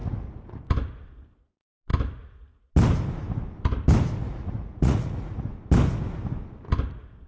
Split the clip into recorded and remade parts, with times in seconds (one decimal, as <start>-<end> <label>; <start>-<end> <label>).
0.0-0.6 remade; 0.6-4.2 recorded; 4.2-5.5 remade; 5.5-7.3 recorded